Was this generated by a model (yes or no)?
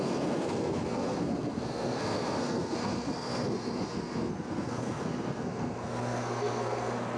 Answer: yes